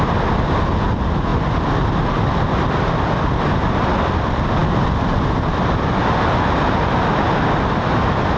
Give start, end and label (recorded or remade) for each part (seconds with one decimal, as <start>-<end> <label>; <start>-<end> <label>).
0.0-8.4 recorded

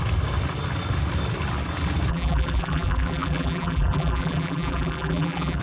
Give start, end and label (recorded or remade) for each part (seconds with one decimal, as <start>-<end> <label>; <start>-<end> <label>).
0.0-2.1 recorded; 2.1-5.6 remade

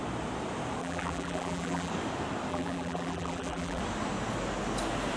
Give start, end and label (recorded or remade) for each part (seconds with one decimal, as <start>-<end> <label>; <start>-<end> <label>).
0.0-0.8 recorded; 0.8-1.9 remade; 1.9-2.5 recorded; 2.5-3.8 remade; 3.8-5.2 recorded

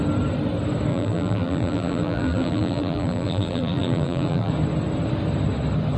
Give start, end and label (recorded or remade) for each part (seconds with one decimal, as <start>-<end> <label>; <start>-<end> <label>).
0.0-0.9 recorded; 0.9-4.5 remade; 4.5-6.0 recorded

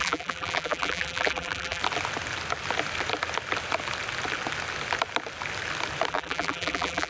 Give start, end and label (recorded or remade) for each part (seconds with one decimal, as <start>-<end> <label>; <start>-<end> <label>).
0.0-1.8 remade; 1.8-6.1 recorded; 6.1-7.1 remade